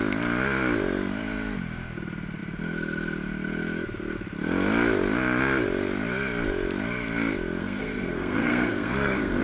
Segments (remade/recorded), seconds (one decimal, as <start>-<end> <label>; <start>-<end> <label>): 0.0-7.6 recorded; 7.6-9.4 remade